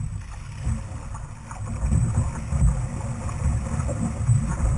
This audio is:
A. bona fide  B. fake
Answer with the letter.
A